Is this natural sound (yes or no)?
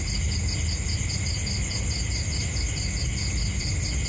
yes